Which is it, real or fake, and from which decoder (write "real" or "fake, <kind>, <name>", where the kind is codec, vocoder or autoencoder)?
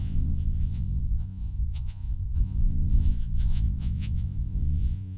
fake, vocoder, Vocos